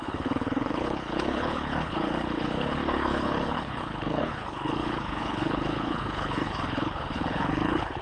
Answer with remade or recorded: remade